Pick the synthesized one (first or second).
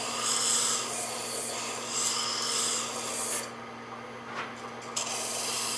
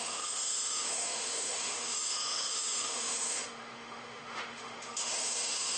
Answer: second